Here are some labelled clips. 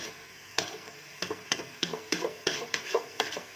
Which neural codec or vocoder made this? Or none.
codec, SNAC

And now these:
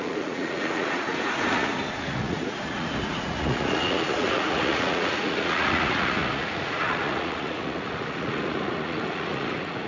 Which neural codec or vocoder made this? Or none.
vocoder, Vocos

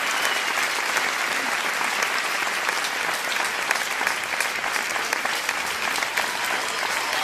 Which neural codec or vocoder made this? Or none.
none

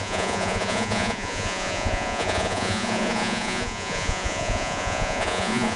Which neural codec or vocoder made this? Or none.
vocoder, Vocos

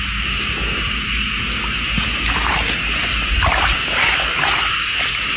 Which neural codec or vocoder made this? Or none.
none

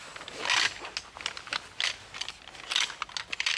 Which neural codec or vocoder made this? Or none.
none